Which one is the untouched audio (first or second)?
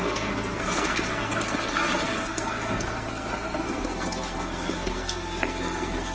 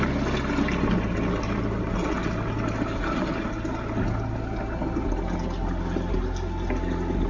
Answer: second